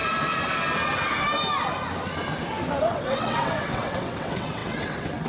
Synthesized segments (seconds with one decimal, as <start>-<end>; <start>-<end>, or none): 2.8-5.3